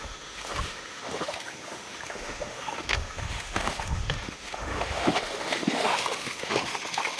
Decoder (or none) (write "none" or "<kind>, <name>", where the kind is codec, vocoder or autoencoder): autoencoder, DAC-VAE